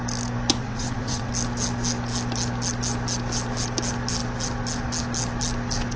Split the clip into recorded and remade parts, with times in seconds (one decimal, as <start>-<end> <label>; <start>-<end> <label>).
0.0-0.6 recorded; 0.6-1.3 remade; 1.3-6.0 recorded